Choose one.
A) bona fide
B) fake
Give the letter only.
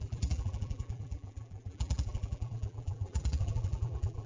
B